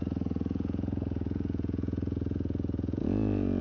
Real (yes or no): no